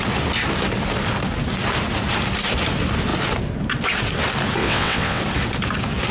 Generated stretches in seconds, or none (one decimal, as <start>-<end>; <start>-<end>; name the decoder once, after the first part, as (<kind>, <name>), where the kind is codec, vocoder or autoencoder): 4.6-5.2 (vocoder, WaveNeXt)